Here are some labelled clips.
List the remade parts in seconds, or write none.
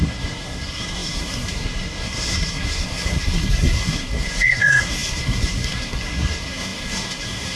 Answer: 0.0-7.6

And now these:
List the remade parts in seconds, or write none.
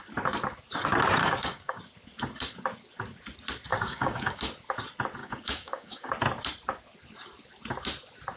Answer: 1.2-1.8; 3.7-4.4; 5.2-6.1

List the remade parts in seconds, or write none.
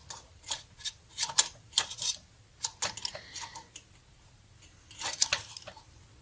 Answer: none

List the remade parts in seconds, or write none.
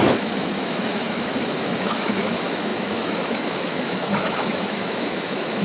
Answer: 0.0-5.6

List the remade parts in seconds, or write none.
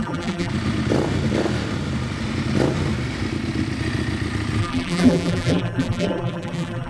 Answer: 0.0-0.5; 4.6-6.9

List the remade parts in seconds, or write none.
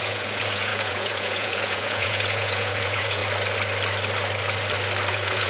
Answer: 0.0-3.2; 5.1-5.5